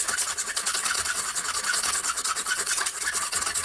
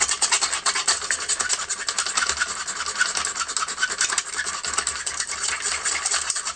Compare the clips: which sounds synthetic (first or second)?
first